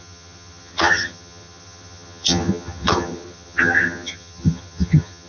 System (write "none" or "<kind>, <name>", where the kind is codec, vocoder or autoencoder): vocoder, HiFi-GAN